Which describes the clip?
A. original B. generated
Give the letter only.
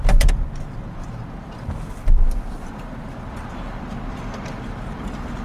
A